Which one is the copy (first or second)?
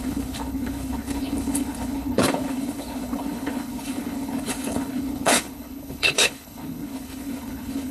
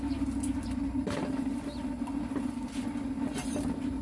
first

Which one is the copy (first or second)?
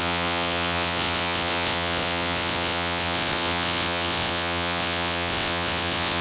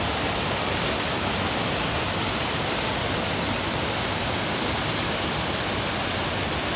first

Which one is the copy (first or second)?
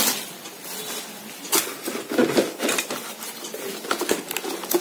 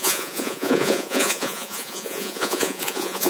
second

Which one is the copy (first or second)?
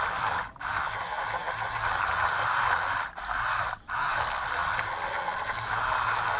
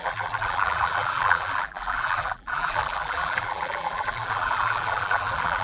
second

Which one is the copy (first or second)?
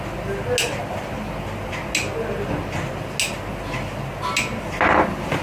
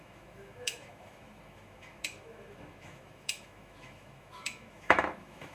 second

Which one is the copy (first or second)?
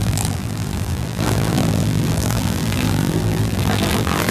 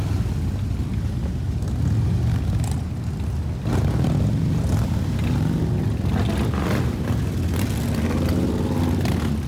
first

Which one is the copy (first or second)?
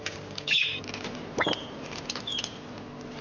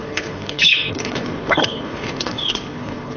second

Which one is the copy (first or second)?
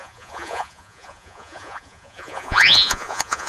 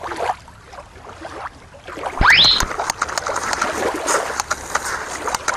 first